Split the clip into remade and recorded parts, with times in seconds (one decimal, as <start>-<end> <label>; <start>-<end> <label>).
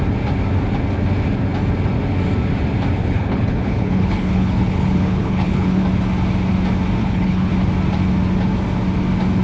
0.0-3.0 recorded; 3.0-5.8 remade; 5.8-7.0 recorded; 7.0-7.5 remade; 7.5-9.4 recorded